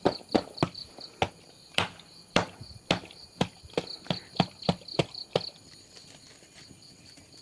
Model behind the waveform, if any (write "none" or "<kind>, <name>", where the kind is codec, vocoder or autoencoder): none